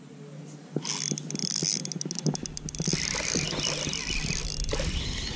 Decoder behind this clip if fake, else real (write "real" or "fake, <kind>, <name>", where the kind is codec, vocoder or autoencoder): real